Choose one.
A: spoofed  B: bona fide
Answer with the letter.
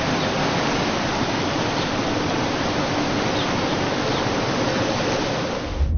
B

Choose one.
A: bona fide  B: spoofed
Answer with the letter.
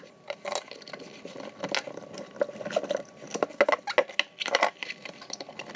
A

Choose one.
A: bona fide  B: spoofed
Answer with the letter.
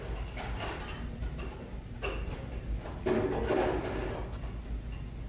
A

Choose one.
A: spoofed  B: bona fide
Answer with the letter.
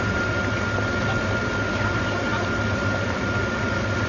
B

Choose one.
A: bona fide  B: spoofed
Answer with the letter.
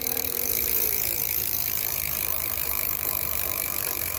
B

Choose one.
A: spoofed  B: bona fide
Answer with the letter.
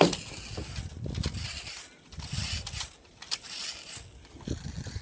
B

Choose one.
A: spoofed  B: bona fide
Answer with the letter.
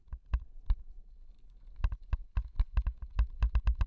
B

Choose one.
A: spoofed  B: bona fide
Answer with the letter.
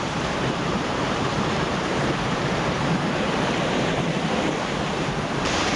A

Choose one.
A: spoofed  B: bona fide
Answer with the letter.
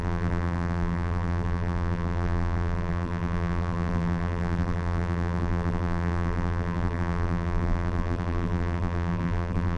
A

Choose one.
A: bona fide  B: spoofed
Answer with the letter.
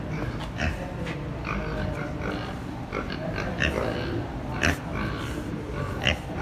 A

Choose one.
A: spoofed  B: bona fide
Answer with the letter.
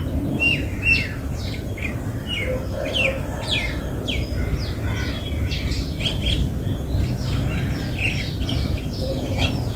B